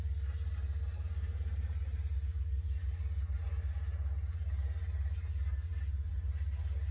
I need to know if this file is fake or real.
real